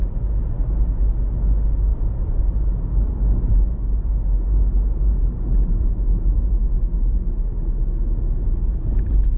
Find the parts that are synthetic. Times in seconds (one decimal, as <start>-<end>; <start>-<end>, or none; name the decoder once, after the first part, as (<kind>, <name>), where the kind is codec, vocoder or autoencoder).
1.9-6.4 (vocoder, BigVGAN v2)